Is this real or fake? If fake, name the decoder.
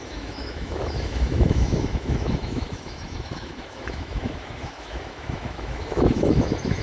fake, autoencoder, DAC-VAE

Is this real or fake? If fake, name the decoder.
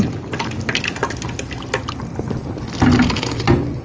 real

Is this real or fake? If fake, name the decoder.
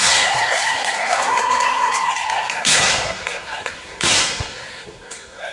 fake, codec, SNAC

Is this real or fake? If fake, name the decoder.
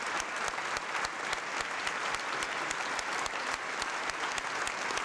real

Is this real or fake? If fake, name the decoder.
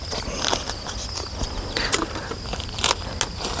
real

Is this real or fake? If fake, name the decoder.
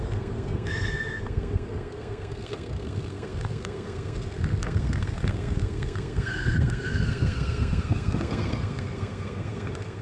fake, codec, SNAC